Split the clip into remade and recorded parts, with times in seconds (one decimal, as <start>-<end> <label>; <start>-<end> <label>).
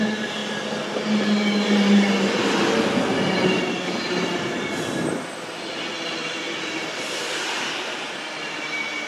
0.0-6.2 recorded; 6.2-8.0 remade; 8.0-9.1 recorded